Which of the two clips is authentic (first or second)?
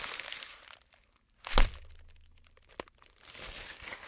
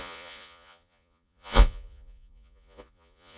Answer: first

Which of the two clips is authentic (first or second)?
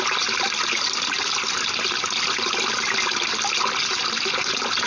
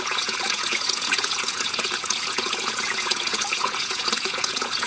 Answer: first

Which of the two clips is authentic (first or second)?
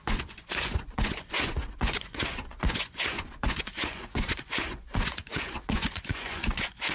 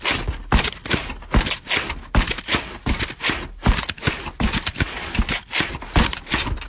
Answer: second